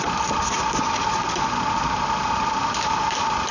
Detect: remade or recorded recorded